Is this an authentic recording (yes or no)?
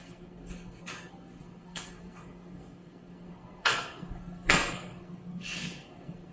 no